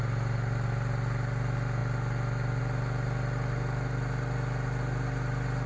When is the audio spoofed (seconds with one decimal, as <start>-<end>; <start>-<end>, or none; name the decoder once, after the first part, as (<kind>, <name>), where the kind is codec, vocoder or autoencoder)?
none